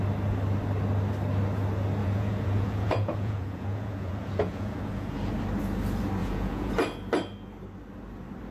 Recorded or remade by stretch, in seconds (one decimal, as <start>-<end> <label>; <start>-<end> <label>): 0.0-2.0 recorded; 2.0-5.3 remade; 5.3-6.2 recorded; 6.2-6.7 remade; 6.7-8.5 recorded